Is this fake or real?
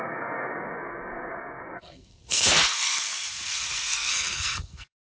fake